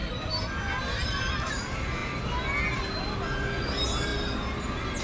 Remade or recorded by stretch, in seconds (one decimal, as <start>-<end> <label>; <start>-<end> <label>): 0.0-5.0 recorded

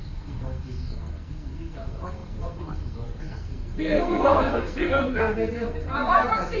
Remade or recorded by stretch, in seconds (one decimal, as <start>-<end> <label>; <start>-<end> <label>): 0.0-6.6 remade

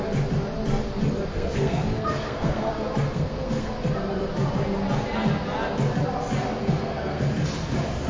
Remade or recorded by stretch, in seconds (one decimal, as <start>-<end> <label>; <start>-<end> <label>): 0.0-1.3 recorded; 1.3-2.7 remade; 2.7-3.1 recorded; 3.1-3.7 remade; 3.7-6.6 recorded; 6.6-7.2 remade; 7.2-8.1 recorded

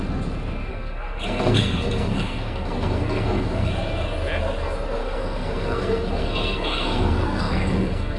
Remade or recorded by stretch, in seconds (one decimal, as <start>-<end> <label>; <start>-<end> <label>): 0.0-0.7 recorded; 0.7-3.7 remade; 3.7-5.0 recorded; 5.0-8.2 remade

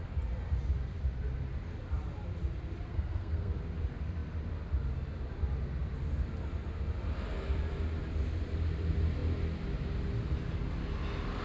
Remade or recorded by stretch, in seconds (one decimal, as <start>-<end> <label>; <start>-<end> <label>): 0.0-2.9 recorded; 2.9-3.5 remade; 3.5-11.4 recorded

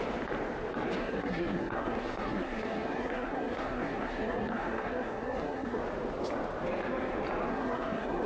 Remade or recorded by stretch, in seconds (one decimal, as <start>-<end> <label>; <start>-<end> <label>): 0.0-1.0 recorded; 1.0-5.8 remade; 5.8-7.5 recorded; 7.5-8.3 remade

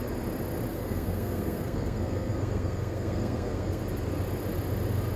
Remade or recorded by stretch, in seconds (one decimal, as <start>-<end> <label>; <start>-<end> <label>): 0.0-0.7 recorded; 0.7-3.8 remade; 3.8-5.2 recorded